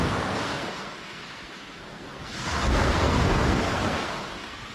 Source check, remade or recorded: remade